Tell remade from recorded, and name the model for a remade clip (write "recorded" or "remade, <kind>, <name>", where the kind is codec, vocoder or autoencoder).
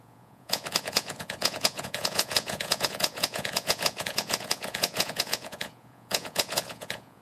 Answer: remade, vocoder, Vocos